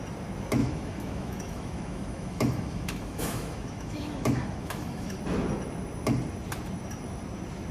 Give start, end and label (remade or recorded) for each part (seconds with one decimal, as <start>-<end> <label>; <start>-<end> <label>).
0.0-0.6 recorded; 0.6-5.2 remade; 5.2-7.7 recorded